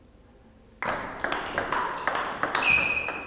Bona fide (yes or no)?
yes